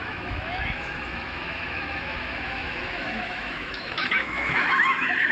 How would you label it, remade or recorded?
remade